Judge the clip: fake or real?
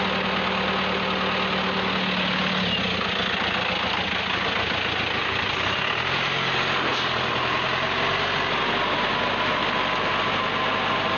real